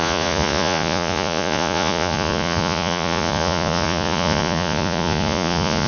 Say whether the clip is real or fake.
fake